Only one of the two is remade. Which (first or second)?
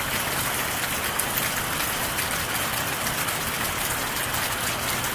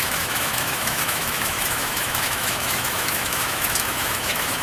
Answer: second